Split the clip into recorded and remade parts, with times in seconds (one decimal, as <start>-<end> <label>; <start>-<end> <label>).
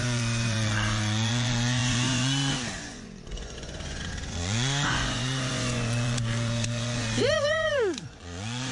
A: 0.0-8.7 remade